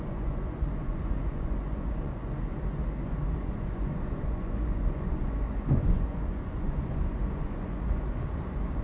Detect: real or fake fake